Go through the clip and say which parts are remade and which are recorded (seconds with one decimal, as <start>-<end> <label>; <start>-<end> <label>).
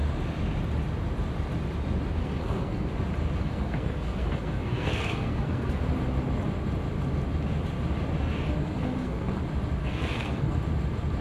0.0-2.2 recorded; 2.2-2.9 remade; 2.9-3.4 recorded; 3.4-5.8 remade; 5.8-8.6 recorded; 8.6-9.4 remade; 9.4-9.8 recorded; 9.8-10.6 remade; 10.6-11.2 recorded